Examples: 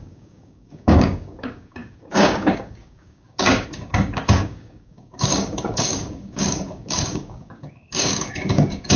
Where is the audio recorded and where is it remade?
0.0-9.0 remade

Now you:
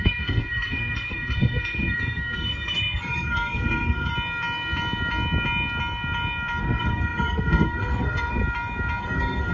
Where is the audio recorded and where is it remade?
0.0-4.1 remade; 4.1-6.6 recorded; 6.6-8.4 remade; 8.4-9.0 recorded; 9.0-9.5 remade

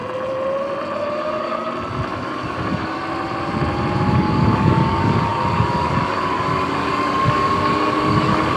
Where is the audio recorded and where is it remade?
0.0-1.1 recorded; 1.1-1.6 remade; 1.6-2.1 recorded; 2.1-3.0 remade; 3.0-4.1 recorded; 4.1-8.6 remade

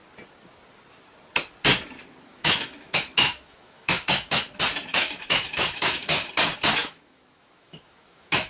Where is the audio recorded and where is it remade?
0.0-2.3 recorded; 2.3-4.4 remade; 4.4-4.9 recorded; 4.9-6.3 remade; 6.3-6.8 recorded; 6.8-8.5 remade

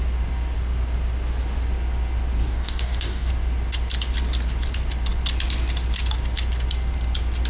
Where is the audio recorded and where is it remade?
0.0-2.4 recorded; 2.4-3.3 remade; 3.3-7.5 recorded

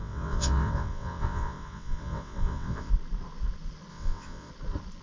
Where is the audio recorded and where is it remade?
0.0-2.9 remade; 2.9-3.9 recorded; 3.9-4.5 remade; 4.5-5.0 recorded